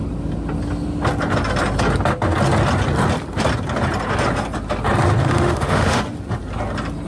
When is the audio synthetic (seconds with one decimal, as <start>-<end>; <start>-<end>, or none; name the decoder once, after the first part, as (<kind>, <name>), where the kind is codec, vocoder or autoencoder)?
5.2-6.0 (autoencoder, DAC-VAE)